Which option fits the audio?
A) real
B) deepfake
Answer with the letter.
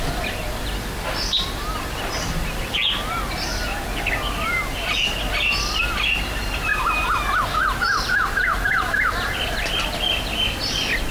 A